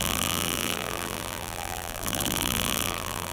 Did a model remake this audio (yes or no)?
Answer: yes